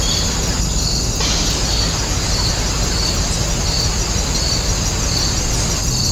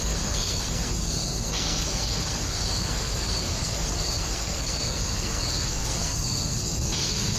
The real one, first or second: first